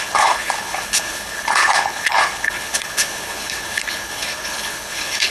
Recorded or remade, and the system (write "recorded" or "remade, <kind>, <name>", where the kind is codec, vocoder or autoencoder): remade, codec, HILCodec